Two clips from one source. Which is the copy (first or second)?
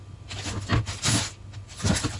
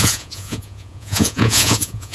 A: second